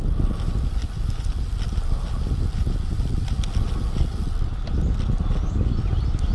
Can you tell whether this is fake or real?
real